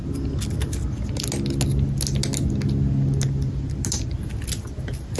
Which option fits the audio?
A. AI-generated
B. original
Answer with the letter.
B